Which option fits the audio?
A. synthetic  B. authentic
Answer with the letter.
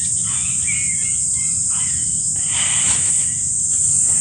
B